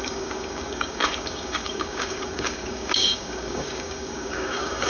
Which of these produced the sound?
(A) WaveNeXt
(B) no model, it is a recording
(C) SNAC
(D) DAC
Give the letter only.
D